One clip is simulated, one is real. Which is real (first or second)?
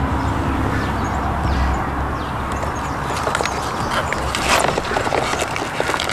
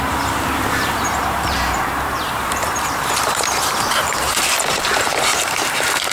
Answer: first